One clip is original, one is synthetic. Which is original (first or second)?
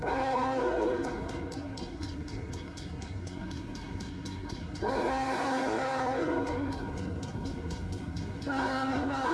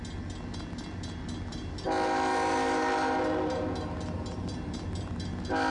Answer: second